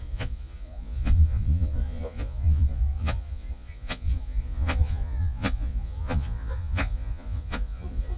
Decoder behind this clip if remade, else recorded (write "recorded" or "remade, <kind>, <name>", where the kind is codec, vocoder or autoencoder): remade, vocoder, Vocos